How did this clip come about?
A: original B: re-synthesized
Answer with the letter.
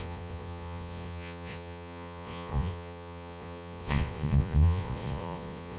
B